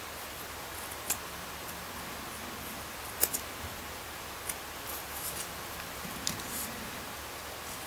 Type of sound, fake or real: real